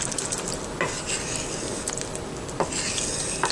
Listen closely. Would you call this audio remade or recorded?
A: recorded